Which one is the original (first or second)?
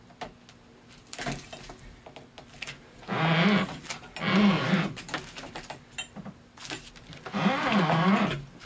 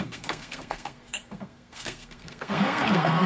first